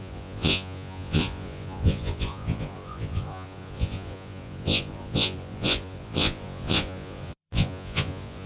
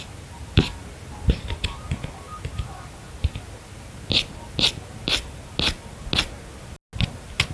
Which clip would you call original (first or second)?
second